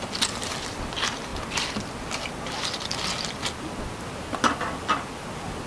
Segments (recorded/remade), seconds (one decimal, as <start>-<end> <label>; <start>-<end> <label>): 0.0-5.7 recorded